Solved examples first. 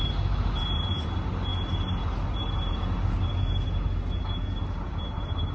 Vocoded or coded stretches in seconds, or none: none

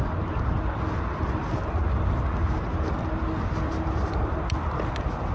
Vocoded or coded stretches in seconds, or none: none

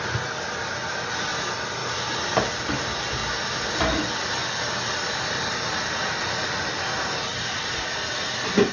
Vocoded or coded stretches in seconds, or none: none

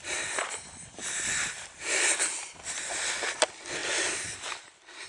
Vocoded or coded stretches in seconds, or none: 0.0-5.1 (vocoder, BigVGAN v2)